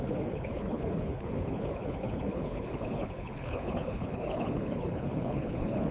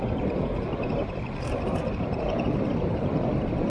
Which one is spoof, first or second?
first